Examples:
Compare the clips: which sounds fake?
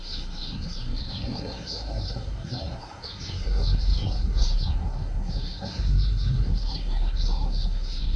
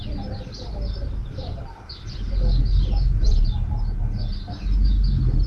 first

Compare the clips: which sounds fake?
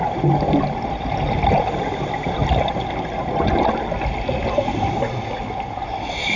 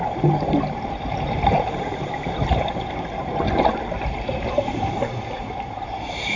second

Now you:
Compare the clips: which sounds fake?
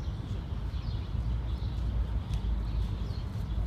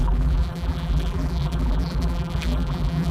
second